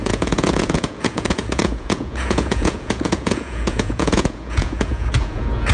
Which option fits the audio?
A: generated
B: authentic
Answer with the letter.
A